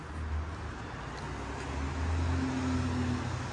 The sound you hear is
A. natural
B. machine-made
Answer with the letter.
A